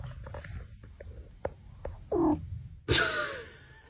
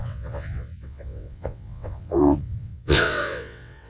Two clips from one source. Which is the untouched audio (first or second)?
first